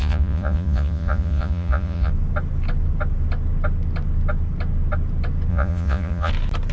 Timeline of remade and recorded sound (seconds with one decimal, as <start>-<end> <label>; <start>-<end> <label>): 0.0-2.1 remade; 2.1-5.5 recorded; 5.5-6.3 remade; 6.3-6.7 recorded